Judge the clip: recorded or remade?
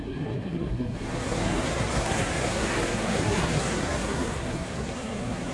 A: remade